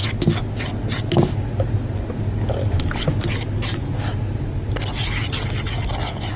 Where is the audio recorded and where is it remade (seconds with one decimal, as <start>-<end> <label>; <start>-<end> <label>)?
0.0-6.4 recorded